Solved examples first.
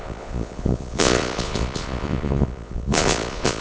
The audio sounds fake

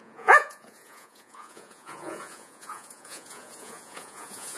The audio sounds fake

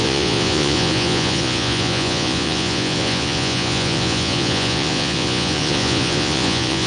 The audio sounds fake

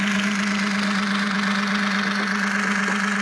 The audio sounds real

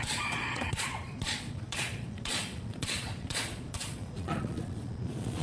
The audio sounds fake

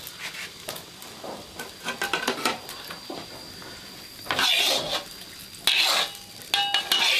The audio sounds real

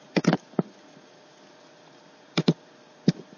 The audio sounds fake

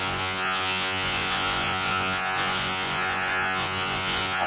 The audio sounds fake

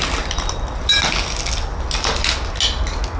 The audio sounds real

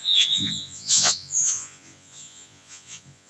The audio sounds fake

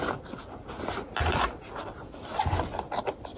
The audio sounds real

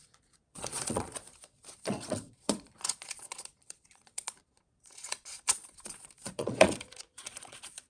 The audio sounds fake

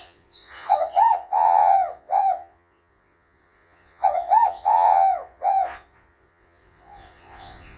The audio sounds fake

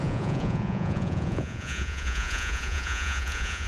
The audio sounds fake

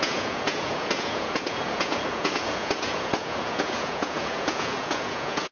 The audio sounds fake